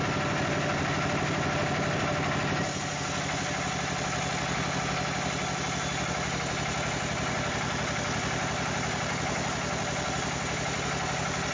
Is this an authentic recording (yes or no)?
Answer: yes